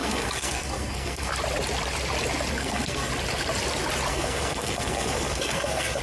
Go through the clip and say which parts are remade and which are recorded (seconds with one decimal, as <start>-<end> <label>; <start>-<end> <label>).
0.0-1.3 remade; 1.3-2.6 recorded; 2.6-3.1 remade; 3.1-4.1 recorded; 4.1-6.0 remade